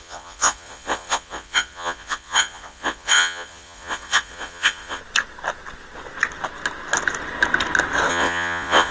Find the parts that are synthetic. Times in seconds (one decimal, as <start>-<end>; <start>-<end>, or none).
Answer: 0.0-5.0; 8.1-8.9